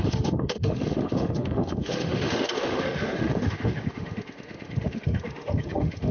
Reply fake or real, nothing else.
fake